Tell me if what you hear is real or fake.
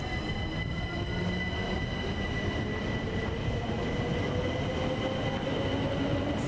real